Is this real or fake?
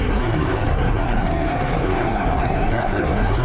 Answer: fake